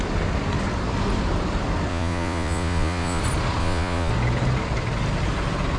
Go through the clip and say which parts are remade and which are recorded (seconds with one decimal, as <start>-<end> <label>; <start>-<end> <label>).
0.0-1.9 recorded; 1.9-3.2 remade; 3.2-3.6 recorded; 3.6-4.1 remade; 4.1-5.8 recorded